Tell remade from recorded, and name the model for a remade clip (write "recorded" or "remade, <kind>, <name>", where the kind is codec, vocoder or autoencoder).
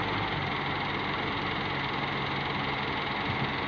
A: recorded